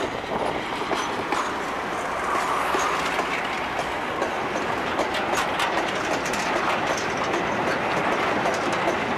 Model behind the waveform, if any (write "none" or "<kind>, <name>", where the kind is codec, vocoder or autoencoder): none